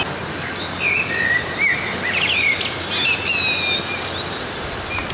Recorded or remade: recorded